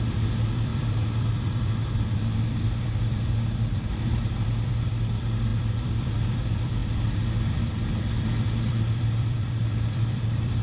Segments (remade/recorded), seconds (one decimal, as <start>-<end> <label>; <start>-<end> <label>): 0.0-10.6 remade